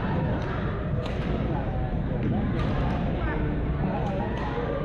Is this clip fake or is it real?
real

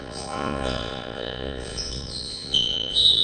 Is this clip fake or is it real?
fake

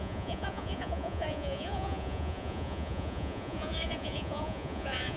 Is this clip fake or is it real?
fake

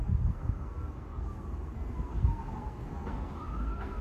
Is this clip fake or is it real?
fake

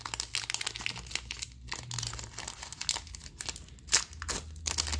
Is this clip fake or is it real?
real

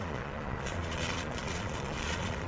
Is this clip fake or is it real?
fake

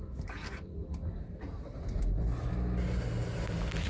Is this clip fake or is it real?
real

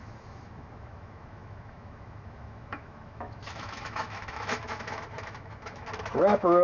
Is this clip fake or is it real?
fake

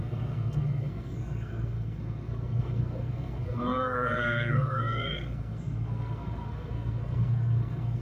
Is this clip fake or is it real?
fake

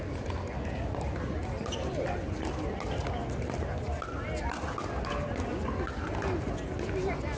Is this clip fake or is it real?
real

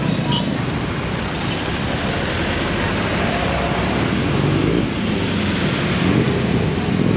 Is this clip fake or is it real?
real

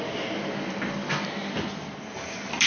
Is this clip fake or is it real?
real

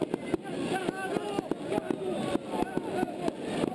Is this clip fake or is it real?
real